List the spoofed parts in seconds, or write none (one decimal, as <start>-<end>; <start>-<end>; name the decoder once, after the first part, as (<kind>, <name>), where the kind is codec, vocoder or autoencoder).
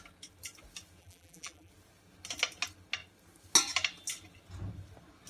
1.0-1.7 (vocoder, BigVGAN v2)